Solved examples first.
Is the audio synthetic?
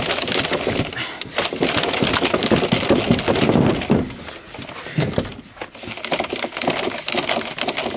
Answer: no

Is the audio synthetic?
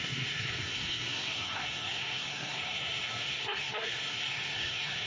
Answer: yes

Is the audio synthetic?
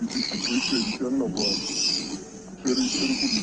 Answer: no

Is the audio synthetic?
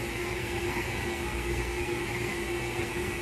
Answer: yes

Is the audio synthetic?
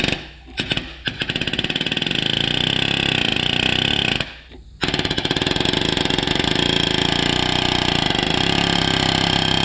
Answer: no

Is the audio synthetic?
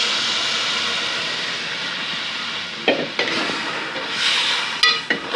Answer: no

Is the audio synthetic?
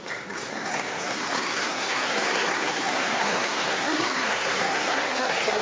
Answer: yes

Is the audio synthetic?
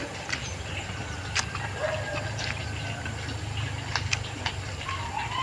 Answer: no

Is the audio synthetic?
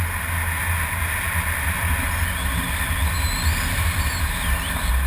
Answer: no